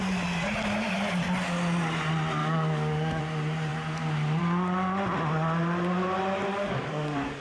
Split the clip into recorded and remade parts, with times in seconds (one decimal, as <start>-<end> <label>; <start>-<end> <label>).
0.0-2.4 recorded; 2.4-3.2 remade; 3.2-6.5 recorded; 6.5-7.4 remade